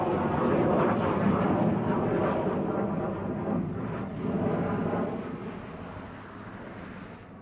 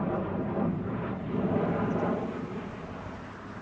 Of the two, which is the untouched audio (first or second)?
first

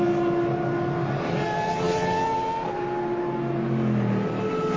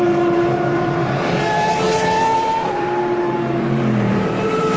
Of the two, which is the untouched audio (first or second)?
first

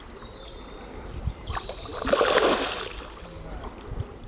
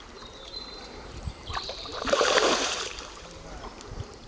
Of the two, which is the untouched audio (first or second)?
first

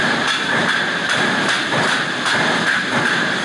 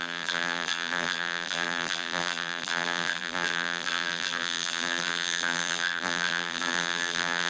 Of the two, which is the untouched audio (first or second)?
first